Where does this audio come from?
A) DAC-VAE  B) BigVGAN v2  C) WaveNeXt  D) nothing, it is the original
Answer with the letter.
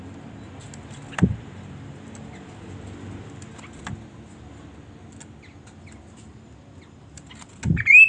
D